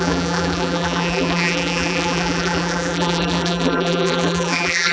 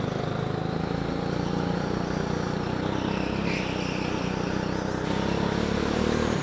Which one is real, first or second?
second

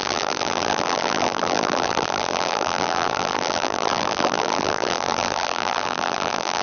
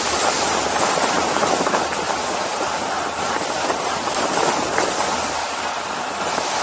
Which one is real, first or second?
second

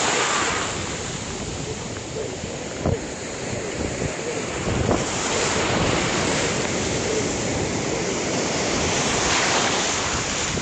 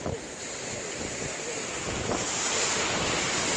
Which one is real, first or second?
second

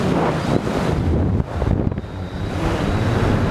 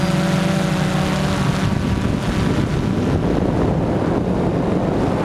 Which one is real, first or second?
second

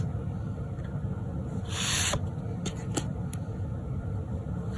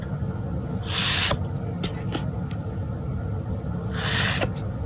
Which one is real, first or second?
second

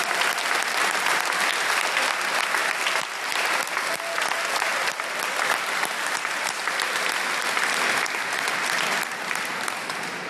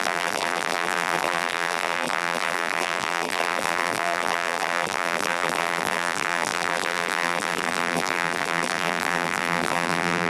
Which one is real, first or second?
first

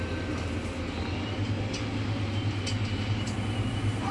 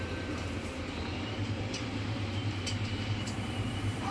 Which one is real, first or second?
first